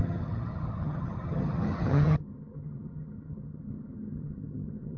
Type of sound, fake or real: fake